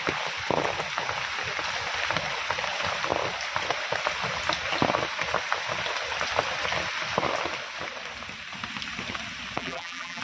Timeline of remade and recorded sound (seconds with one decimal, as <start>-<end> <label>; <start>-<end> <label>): 0.0-9.6 recorded; 9.6-10.2 remade

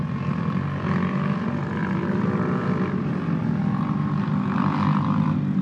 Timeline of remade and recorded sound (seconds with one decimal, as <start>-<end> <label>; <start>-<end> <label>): 0.0-1.8 recorded; 1.8-3.4 remade; 3.4-5.6 recorded